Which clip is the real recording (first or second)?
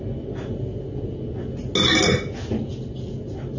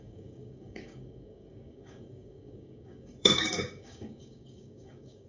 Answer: first